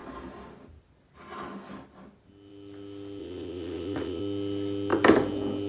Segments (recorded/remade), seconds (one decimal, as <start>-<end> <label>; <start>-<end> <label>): 0.0-3.2 recorded; 3.2-4.2 remade; 4.2-5.7 recorded